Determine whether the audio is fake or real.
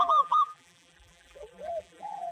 fake